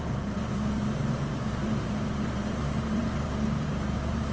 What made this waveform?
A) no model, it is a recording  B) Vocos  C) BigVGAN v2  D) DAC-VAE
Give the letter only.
C